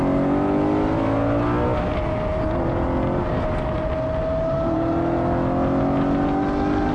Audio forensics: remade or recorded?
recorded